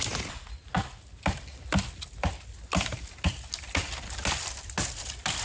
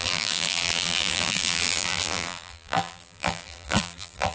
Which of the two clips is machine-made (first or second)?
second